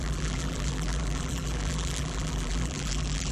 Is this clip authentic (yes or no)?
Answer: no